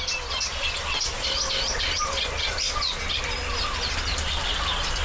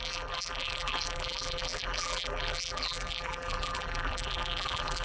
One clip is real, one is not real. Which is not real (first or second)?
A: second